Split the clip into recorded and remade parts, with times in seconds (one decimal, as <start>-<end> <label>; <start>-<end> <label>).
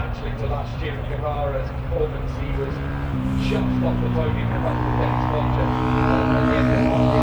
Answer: 0.0-2.9 remade; 2.9-6.3 recorded; 6.3-7.2 remade